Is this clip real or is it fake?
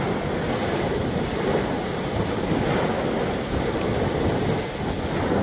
real